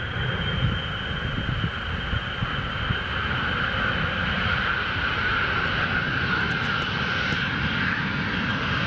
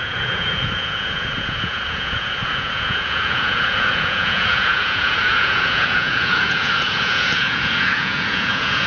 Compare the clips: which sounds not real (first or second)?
second